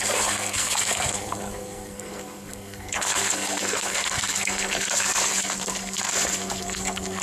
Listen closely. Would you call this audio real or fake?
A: fake